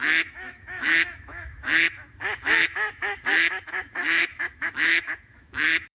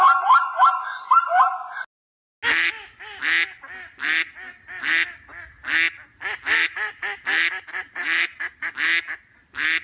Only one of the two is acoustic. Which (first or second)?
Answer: second